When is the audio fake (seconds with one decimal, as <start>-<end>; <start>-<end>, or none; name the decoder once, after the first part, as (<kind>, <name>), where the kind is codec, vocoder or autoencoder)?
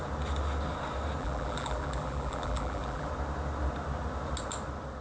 1.2-3.1 (vocoder, BigVGAN v2)